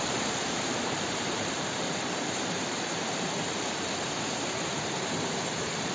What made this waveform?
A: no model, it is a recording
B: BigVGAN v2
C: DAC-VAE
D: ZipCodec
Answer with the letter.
B